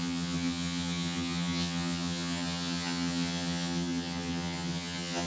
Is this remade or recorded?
remade